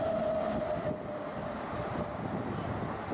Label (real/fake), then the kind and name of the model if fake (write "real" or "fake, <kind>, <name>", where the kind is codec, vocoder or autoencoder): real